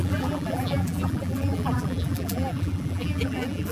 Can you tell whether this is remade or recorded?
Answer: remade